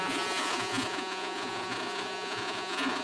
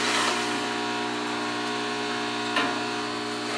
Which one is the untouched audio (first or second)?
second